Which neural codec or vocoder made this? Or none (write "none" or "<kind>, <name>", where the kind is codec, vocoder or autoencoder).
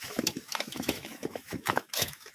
autoencoder, DAC-VAE